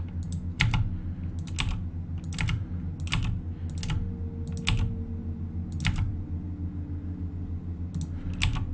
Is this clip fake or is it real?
real